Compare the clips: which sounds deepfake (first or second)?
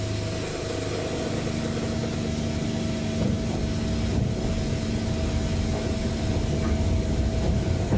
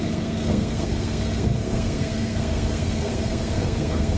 second